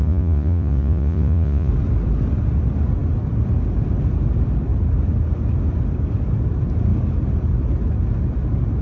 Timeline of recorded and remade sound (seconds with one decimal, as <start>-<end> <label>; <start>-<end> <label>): 0.0-1.7 remade; 1.7-8.8 recorded